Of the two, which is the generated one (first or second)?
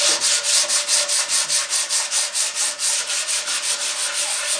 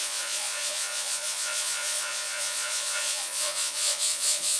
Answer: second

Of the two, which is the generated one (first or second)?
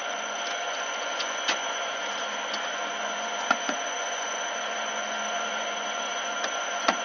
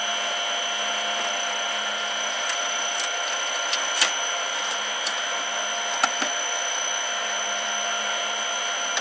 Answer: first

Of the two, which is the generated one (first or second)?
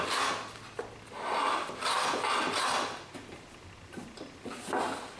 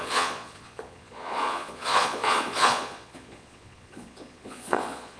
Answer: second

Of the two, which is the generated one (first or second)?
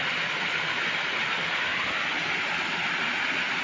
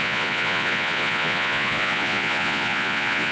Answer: second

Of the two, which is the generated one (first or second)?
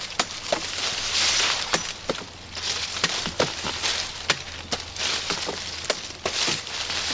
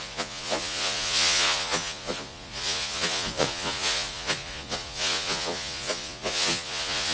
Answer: second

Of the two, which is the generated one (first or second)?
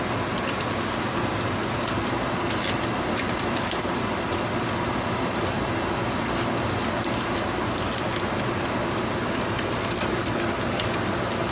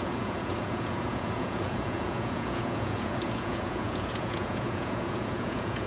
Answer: second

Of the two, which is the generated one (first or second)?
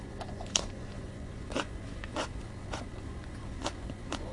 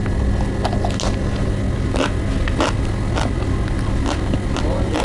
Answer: first